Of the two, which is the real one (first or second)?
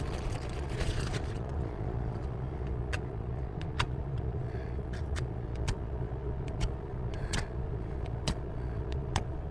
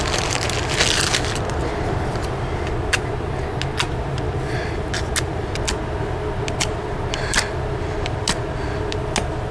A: second